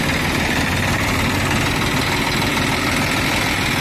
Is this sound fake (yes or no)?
no